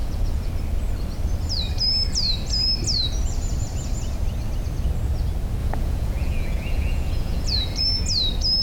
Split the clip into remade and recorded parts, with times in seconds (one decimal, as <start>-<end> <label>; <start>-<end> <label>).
0.0-0.5 remade; 0.5-5.6 recorded; 5.6-7.8 remade; 7.8-8.6 recorded